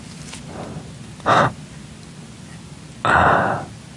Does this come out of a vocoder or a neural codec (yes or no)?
no